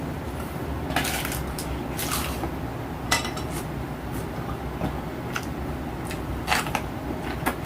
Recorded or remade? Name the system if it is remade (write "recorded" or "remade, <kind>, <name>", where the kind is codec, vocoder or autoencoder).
recorded